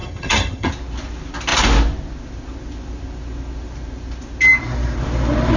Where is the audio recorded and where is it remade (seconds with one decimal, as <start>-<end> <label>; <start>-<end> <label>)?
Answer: 0.0-0.7 remade; 0.7-5.6 recorded